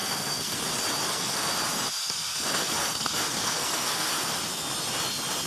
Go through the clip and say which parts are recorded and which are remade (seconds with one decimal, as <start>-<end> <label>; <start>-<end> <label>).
0.0-0.6 remade; 0.6-1.0 recorded; 1.0-1.5 remade; 1.5-2.0 recorded; 2.0-4.1 remade; 4.1-5.5 recorded